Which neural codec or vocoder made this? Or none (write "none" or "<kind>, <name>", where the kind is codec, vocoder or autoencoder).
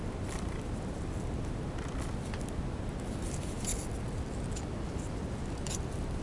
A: none